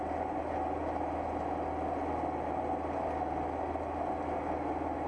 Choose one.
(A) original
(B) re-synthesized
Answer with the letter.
A